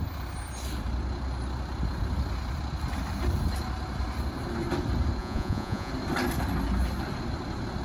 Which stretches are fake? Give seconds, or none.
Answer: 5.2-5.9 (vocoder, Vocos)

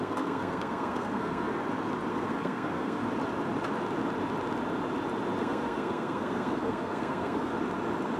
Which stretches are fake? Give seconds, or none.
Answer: 0.0-1.5 (codec, SNAC); 2.1-3.0; 5.4-7.5

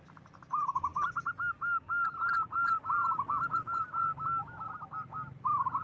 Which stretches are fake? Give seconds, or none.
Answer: none

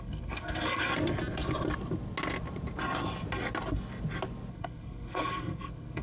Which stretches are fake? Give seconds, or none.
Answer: 0.0-0.9 (codec, SNAC); 4.5-6.0

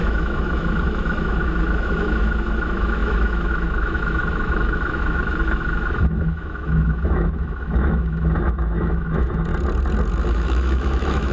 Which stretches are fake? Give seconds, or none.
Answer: 0.0-9.5 (autoencoder, DAC-VAE); 10.2-11.3

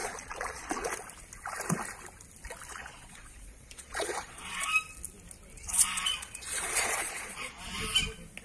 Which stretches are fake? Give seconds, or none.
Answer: 0.0-0.9 (vocoder, Vocos); 2.7-4.7; 5.5-7.6

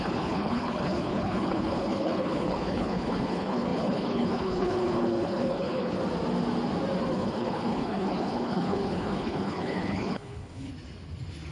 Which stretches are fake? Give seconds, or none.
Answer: 0.0-6.0 (codec, HILCodec); 7.1-10.7

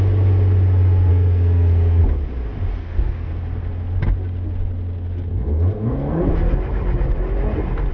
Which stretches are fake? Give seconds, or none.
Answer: 1.1-2.0 (codec, SNAC); 2.8-3.3; 5.3-6.2